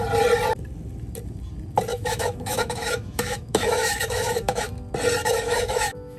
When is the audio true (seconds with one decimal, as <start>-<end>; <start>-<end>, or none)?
0.0-1.9; 4.7-5.2